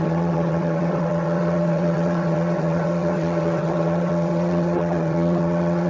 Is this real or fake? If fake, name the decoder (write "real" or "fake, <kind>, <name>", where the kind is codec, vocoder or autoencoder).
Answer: fake, vocoder, WaveNeXt